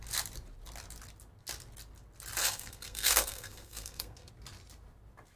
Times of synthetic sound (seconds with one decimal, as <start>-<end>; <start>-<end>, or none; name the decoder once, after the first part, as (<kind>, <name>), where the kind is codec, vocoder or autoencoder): 2.4-4.3 (codec, SNAC)